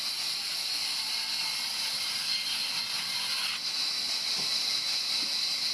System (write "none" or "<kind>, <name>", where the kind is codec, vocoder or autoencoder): none